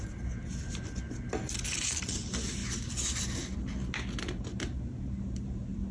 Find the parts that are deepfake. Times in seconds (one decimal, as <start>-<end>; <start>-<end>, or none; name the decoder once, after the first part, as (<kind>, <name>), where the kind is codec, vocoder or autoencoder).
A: none